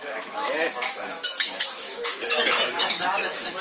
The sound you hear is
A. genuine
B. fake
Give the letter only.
B